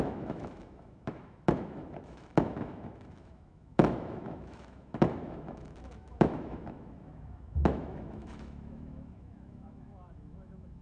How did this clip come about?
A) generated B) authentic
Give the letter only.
A